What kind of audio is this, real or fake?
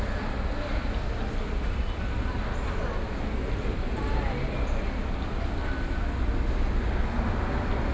real